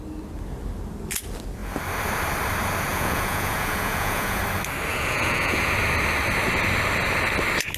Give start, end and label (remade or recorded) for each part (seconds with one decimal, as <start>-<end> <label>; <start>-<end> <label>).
0.0-2.9 recorded; 2.9-4.4 remade; 4.4-4.9 recorded; 4.9-5.7 remade; 5.7-7.8 recorded